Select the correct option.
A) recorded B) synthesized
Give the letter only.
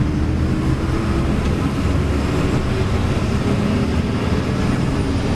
A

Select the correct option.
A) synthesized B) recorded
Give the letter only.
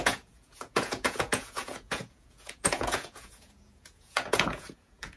A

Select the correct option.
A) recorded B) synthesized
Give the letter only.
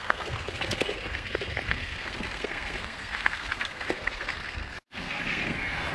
B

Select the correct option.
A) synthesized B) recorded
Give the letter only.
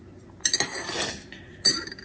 B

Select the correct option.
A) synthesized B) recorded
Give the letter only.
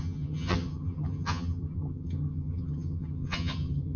A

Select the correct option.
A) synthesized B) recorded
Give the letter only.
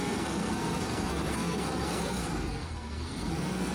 A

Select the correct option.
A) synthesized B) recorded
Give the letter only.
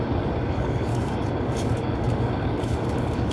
A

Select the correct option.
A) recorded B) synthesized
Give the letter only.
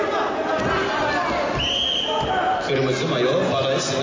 A